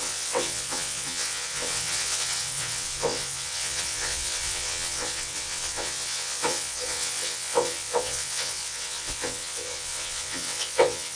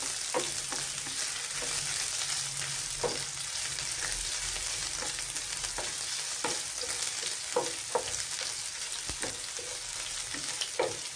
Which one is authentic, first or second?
second